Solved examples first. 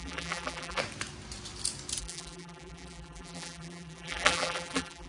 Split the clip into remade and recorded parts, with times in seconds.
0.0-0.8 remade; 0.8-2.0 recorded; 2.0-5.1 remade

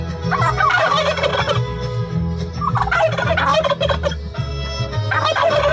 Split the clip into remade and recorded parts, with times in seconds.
0.0-5.7 recorded